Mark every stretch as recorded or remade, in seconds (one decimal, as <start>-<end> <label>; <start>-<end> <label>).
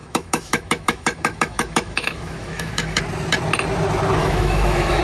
0.0-3.0 remade; 3.0-4.2 recorded; 4.2-5.0 remade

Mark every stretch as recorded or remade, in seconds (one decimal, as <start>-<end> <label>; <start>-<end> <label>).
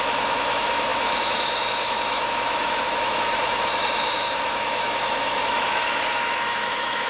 0.0-7.1 remade